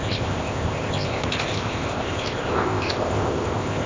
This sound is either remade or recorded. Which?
remade